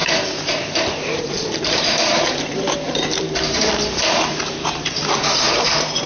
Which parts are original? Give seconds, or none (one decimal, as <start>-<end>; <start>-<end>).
none

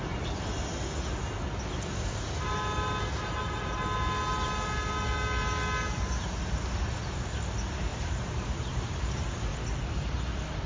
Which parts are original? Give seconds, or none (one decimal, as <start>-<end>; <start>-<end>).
0.0-7.9; 9.9-10.7

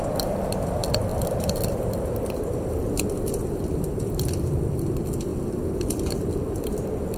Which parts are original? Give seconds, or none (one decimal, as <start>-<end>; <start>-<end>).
0.0-1.1; 2.7-7.2

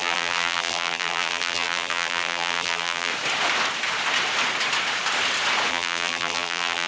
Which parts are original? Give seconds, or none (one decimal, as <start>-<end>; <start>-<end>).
3.1-5.7

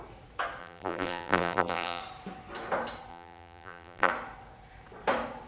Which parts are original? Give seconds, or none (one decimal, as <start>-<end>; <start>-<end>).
0.0-0.6; 2.0-3.1; 4.1-5.5

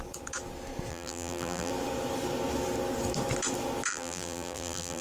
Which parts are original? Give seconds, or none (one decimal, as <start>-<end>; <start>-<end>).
0.0-0.9; 1.7-3.9

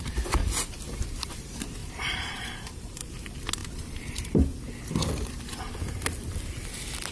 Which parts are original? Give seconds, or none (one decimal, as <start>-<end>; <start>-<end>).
0.0-1.8; 3.1-3.6; 4.3-7.1